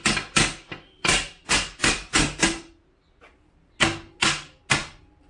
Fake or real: real